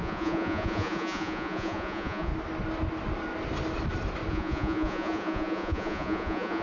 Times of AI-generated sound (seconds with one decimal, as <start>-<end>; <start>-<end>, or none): 0.0-2.3; 4.3-6.6